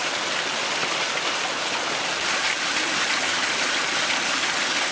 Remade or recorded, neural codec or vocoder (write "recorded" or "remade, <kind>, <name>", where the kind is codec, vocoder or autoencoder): recorded